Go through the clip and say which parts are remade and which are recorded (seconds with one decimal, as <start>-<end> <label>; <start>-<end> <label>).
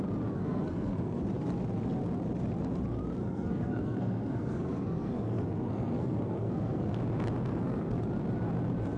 0.0-0.4 recorded; 0.4-1.2 remade; 1.2-3.2 recorded; 3.2-7.0 remade; 7.0-7.5 recorded; 7.5-8.0 remade; 8.0-9.0 recorded